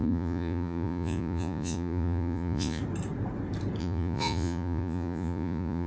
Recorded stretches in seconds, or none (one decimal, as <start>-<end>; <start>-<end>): 2.8-3.8